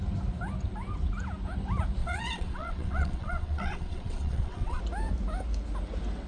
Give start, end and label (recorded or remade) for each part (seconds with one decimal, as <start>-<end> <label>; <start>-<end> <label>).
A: 0.0-2.0 recorded; 2.0-4.8 remade; 4.8-6.3 recorded